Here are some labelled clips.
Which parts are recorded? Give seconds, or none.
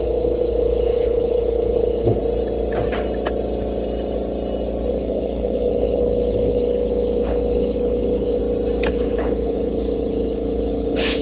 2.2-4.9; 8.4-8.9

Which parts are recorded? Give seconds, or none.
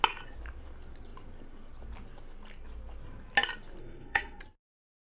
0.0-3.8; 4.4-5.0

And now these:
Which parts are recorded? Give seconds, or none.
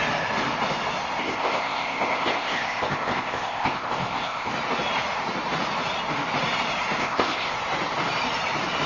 0.0-1.2; 4.5-7.0; 7.5-8.9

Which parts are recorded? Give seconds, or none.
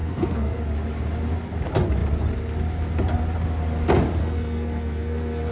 0.6-4.2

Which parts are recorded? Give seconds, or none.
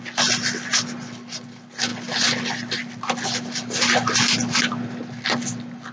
0.0-5.9